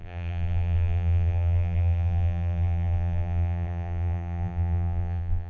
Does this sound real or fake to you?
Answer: fake